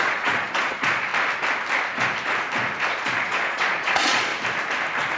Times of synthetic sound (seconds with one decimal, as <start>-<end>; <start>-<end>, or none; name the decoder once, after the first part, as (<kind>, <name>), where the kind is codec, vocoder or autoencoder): 0.0-1.1 (vocoder, Vocos); 2.9-4.3